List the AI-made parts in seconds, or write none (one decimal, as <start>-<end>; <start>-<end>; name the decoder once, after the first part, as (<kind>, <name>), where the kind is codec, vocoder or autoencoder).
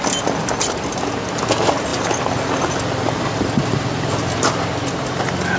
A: none